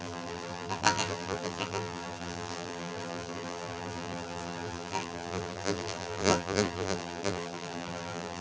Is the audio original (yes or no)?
no